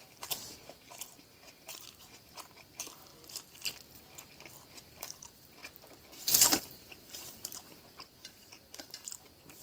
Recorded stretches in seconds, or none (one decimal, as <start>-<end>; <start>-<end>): 3.1-4.7; 5.6-6.2